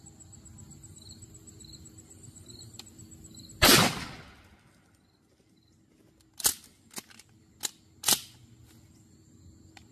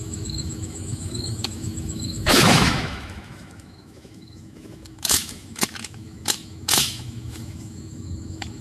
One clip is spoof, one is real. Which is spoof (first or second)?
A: second